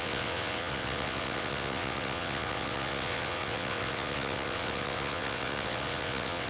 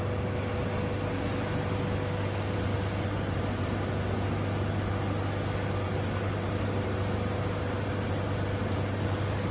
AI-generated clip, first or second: first